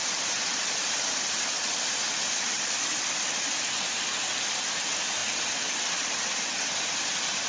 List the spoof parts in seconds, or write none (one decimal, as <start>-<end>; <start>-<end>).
0.0-7.5